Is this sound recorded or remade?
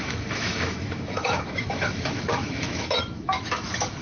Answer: remade